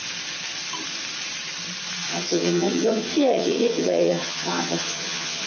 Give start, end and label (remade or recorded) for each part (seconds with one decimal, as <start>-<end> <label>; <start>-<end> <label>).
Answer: 0.0-2.1 recorded; 2.1-5.5 remade